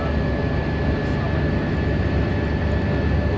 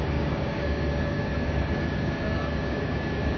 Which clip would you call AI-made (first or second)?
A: second